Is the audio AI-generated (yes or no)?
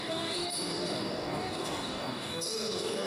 yes